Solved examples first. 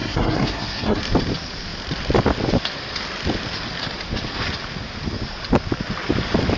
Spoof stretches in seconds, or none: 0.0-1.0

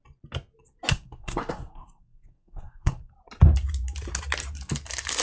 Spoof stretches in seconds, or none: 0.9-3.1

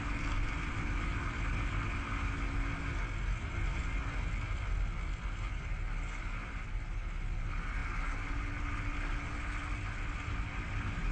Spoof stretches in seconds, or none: none